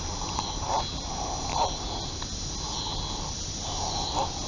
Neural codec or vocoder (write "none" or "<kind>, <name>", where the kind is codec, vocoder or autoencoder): none